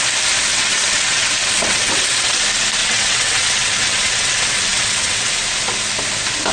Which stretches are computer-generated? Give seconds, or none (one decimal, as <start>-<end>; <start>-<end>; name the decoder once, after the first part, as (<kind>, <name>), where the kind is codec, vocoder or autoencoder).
0.5-2.4 (vocoder, WaveNeXt); 2.8-5.3